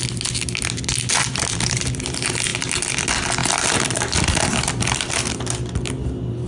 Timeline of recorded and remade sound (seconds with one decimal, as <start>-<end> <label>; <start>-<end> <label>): 0.0-6.5 recorded